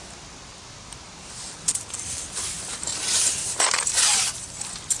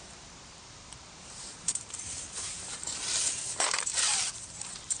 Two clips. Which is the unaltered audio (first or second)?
first